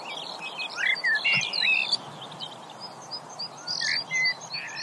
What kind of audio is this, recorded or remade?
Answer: recorded